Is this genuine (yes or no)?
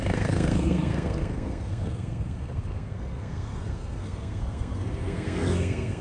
no